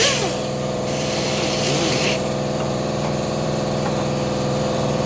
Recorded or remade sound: remade